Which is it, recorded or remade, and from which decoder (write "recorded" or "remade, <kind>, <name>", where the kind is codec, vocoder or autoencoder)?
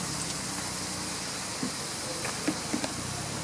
recorded